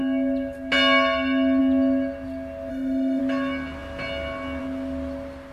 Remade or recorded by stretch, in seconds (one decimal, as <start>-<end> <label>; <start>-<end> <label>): 0.0-2.7 recorded; 2.7-3.2 remade; 3.2-5.5 recorded